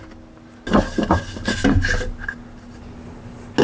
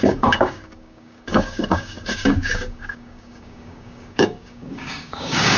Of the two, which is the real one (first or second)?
first